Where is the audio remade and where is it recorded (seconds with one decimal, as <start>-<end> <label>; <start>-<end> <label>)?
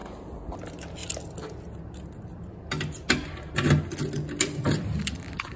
0.0-5.6 recorded